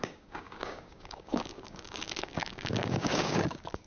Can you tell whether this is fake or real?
fake